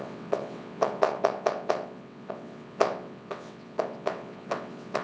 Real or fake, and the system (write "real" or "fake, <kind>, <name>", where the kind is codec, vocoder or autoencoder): fake, vocoder, WaveNeXt